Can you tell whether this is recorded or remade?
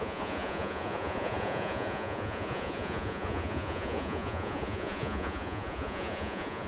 remade